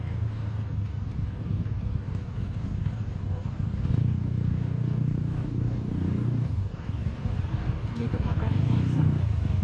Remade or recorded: remade